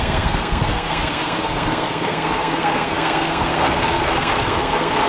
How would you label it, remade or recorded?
remade